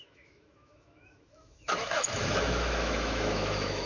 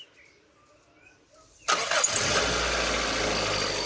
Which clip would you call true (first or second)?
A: second